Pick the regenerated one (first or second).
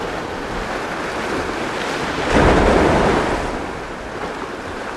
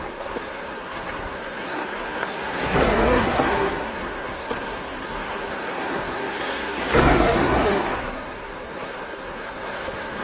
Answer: second